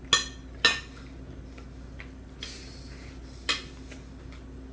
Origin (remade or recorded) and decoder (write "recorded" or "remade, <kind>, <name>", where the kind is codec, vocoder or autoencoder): recorded